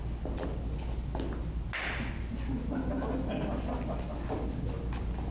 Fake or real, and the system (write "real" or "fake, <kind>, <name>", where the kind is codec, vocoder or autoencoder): real